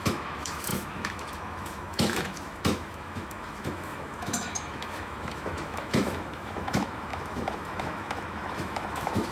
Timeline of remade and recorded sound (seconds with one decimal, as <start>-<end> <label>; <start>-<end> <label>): 0.0-9.3 remade